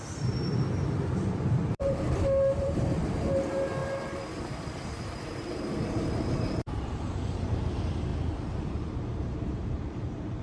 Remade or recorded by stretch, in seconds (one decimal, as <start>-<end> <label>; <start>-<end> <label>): 0.0-8.1 remade; 8.1-8.7 recorded; 8.7-10.4 remade

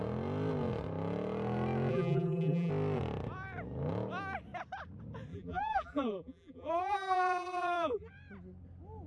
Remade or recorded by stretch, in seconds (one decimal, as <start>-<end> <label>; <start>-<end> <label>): 0.0-1.9 recorded; 1.9-2.7 remade; 2.7-5.3 recorded; 5.3-8.1 remade; 8.1-9.1 recorded

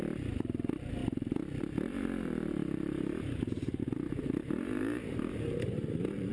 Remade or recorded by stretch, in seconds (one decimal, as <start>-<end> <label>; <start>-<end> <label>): 0.0-6.3 remade